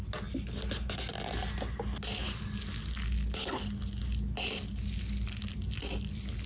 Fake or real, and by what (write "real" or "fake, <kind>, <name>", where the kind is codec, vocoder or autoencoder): real